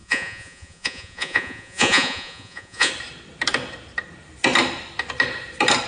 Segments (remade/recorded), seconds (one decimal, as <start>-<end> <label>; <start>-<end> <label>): 0.0-2.9 remade; 2.9-5.9 recorded